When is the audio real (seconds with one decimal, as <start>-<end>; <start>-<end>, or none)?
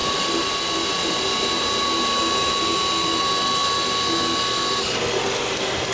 3.2-5.9